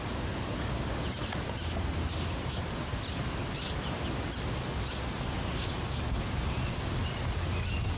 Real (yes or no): yes